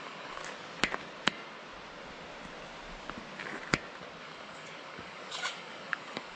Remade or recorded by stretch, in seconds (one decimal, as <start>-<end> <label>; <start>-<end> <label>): 0.0-0.4 remade; 0.4-4.2 recorded; 4.2-6.4 remade